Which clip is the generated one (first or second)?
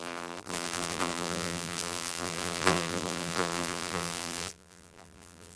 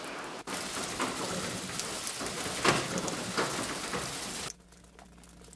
first